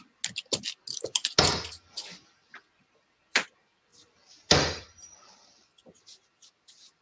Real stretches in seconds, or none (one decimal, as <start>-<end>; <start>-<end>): 0.0-3.9